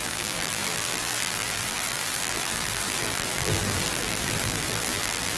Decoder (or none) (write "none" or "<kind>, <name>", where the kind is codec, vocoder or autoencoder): vocoder, BigVGAN v2